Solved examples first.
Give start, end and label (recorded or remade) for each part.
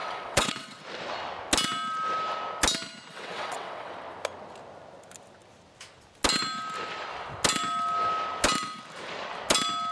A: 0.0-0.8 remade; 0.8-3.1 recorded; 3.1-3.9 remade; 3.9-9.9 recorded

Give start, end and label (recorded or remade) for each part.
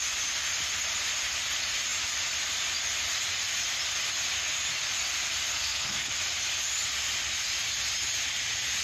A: 0.0-5.5 recorded; 5.5-6.1 remade; 6.1-8.8 recorded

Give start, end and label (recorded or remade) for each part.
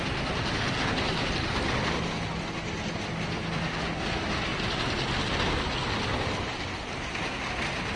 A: 0.0-8.0 recorded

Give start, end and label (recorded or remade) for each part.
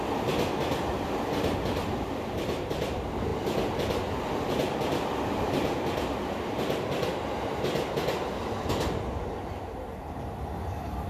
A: 0.0-11.1 recorded